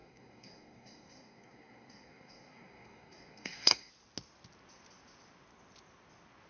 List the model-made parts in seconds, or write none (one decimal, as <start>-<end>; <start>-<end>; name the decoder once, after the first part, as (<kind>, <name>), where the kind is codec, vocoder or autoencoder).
0.0-3.9 (codec, SNAC)